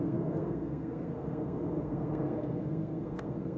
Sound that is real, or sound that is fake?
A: fake